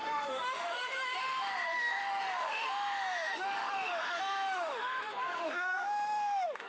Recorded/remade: remade